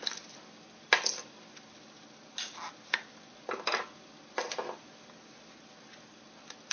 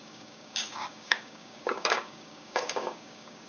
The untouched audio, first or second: first